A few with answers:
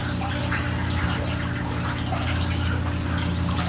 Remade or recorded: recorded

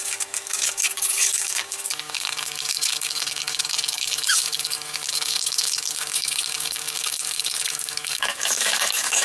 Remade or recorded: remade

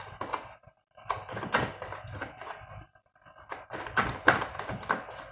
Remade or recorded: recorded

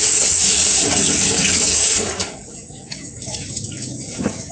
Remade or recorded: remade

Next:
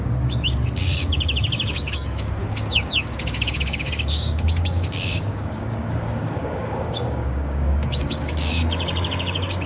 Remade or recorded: remade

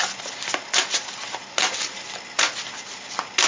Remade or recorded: recorded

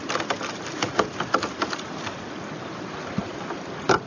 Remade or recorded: recorded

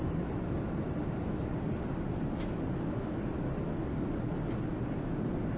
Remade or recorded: recorded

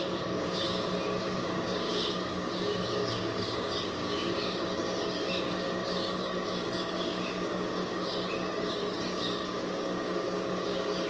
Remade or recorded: remade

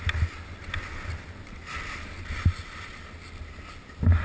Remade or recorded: recorded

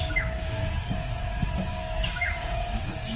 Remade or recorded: remade